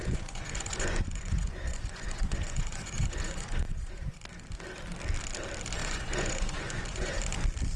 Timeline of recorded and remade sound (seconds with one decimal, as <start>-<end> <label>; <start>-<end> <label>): 0.0-4.3 remade; 4.3-5.8 recorded; 5.8-7.2 remade; 7.2-7.8 recorded